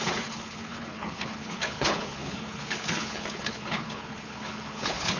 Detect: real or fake fake